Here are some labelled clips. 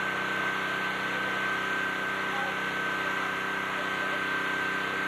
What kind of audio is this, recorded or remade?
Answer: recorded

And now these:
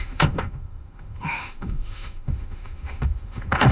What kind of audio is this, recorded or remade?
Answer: remade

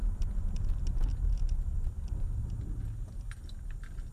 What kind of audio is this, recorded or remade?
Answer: recorded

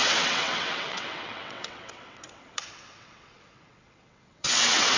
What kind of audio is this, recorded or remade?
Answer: remade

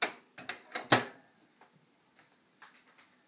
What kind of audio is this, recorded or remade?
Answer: recorded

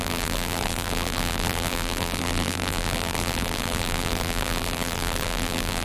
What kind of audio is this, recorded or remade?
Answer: remade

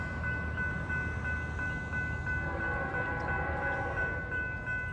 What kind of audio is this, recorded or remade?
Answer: recorded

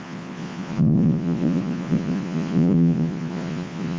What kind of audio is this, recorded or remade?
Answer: remade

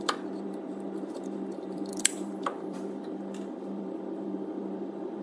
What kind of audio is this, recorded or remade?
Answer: remade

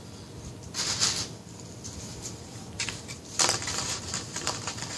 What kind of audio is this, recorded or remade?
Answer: remade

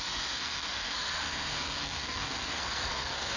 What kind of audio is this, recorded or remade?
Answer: remade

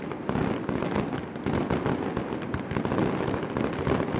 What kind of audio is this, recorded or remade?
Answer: recorded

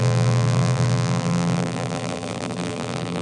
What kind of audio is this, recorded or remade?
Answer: remade